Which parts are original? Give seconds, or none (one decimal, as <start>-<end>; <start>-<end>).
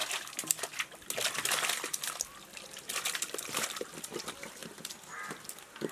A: 0.0-5.9